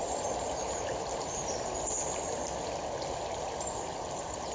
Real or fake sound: real